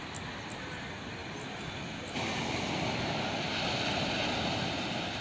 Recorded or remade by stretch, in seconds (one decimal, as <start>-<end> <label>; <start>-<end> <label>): 0.0-5.2 recorded